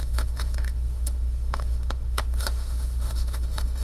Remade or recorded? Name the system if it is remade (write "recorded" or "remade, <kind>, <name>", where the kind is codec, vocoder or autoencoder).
remade, autoencoder, DAC-VAE